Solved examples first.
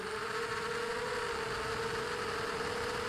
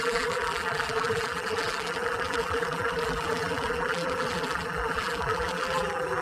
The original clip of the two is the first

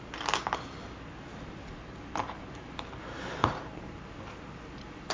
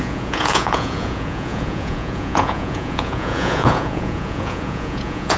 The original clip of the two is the first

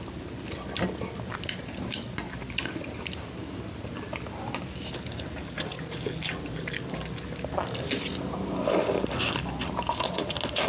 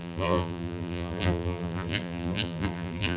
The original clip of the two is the first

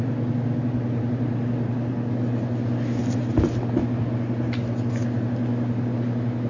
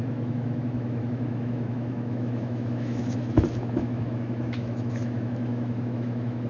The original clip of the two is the first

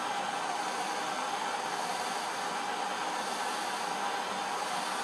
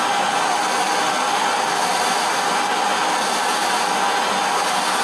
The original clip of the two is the second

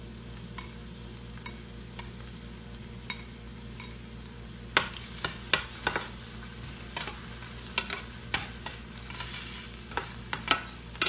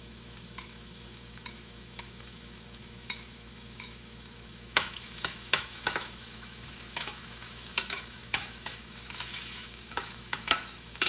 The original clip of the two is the first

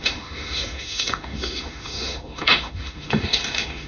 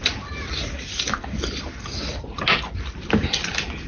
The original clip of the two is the second